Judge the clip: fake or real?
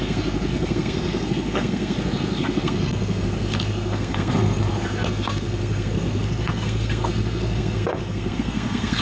fake